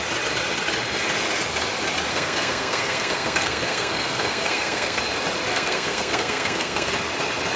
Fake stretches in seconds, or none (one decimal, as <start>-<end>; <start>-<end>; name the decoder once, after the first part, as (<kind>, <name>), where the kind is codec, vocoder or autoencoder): 2.1-5.0 (codec, SNAC); 5.5-6.9